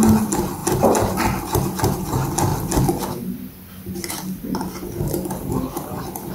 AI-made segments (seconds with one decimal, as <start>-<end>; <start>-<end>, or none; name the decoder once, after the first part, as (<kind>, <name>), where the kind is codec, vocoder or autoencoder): none

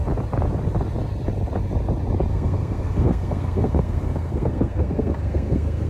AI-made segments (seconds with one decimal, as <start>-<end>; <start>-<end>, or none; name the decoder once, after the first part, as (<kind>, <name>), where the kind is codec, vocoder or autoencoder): 2.3-5.9 (codec, SNAC)

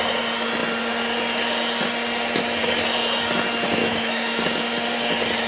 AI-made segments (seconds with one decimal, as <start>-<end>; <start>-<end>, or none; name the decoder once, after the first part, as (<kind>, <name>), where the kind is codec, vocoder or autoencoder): 3.8-4.4 (autoencoder, DAC-VAE)